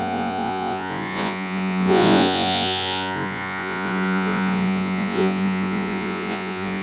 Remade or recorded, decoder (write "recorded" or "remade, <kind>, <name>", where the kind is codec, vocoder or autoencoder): remade, vocoder, Vocos